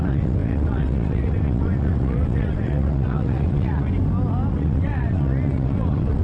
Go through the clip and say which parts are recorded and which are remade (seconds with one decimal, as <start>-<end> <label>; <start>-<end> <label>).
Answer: 0.0-3.9 remade; 3.9-4.5 recorded; 4.5-6.2 remade